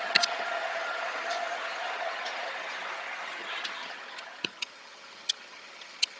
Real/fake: fake